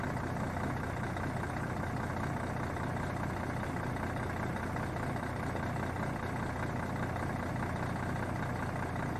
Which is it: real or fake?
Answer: real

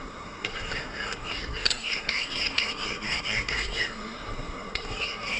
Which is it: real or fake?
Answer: fake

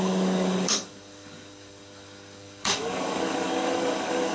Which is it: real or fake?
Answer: fake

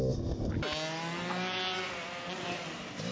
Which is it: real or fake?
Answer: real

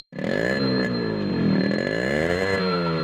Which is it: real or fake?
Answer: fake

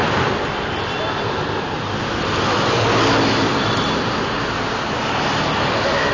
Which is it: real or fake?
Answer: real